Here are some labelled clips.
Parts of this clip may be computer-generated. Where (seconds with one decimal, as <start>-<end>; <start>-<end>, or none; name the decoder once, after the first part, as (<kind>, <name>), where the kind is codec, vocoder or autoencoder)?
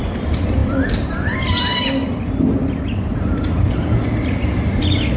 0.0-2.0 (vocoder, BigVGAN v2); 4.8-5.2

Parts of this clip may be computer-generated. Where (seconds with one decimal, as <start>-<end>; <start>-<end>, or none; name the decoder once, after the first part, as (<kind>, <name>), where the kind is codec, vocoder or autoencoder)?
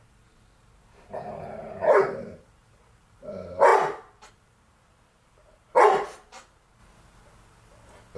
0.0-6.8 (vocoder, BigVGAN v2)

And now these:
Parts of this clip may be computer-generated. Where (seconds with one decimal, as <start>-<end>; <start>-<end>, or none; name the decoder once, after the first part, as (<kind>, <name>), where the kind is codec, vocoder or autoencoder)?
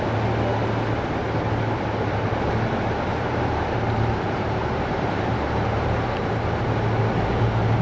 3.1-6.3 (vocoder, BigVGAN v2)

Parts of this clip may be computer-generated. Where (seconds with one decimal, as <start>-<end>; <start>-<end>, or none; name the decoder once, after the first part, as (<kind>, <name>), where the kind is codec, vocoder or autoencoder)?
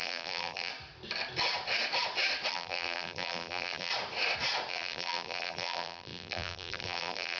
0.0-0.7 (vocoder, BigVGAN v2); 2.5-3.9; 4.7-7.4